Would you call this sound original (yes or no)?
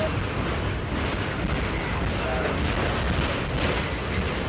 yes